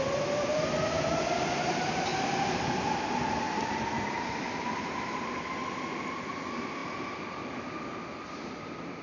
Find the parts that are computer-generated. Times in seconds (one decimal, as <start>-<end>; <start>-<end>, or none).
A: none

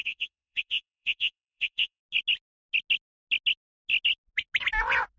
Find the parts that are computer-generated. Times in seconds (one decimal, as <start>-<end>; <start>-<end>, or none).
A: 0.0-2.0

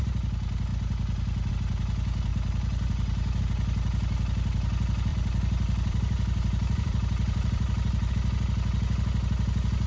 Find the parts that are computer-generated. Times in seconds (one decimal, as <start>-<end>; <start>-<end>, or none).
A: 2.3-3.4; 5.1-8.1